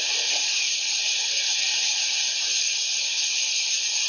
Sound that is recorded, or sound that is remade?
recorded